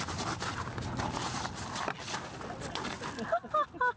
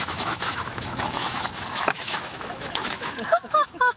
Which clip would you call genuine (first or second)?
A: first